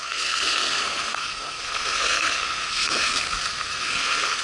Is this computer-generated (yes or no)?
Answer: yes